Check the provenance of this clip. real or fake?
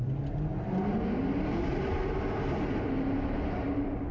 real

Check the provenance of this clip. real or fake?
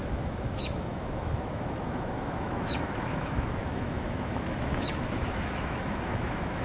fake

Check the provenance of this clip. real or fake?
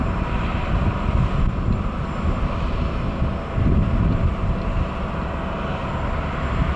real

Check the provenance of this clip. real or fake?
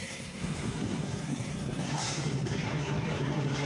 fake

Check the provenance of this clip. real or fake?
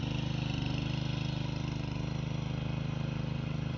real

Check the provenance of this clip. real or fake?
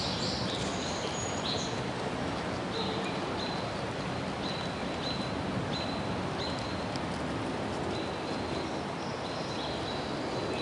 real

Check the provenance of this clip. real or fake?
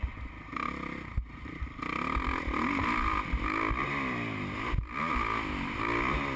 real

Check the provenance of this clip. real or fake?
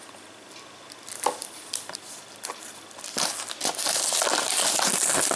real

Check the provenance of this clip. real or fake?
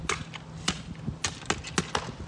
real